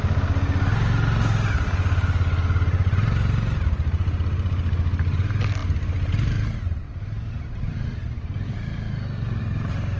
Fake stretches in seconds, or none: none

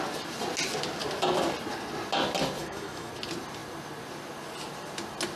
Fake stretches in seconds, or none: 2.6-3.1 (autoencoder, DAC-VAE)